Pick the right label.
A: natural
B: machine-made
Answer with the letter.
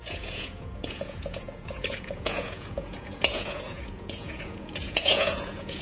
B